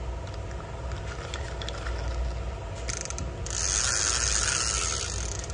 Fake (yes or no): no